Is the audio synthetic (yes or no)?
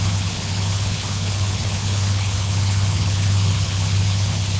yes